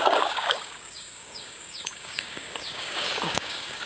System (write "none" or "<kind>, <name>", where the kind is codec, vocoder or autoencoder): codec, DAC